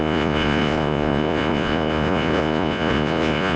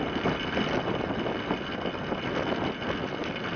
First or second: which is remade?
first